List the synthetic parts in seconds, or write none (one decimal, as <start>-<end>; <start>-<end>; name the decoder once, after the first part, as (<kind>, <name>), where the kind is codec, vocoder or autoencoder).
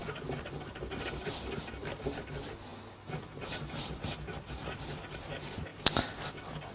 none